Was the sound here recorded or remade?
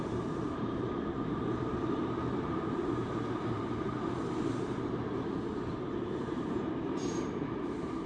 remade